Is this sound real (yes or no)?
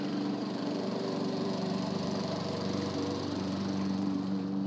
no